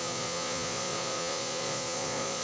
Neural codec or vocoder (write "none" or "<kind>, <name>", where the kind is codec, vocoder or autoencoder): vocoder, Vocos